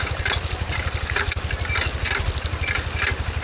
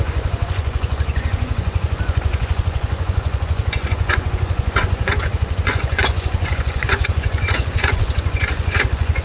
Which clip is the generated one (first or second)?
second